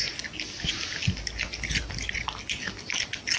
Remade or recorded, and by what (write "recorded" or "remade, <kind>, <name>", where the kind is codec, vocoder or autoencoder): recorded